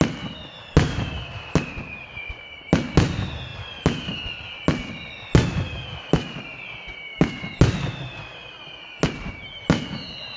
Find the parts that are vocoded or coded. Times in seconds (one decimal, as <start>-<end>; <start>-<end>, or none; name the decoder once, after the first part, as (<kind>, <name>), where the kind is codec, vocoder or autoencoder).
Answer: none